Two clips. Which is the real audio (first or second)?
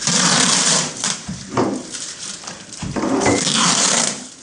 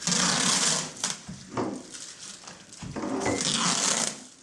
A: second